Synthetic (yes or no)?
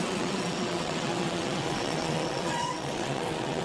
yes